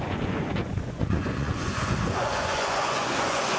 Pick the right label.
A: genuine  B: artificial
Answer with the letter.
B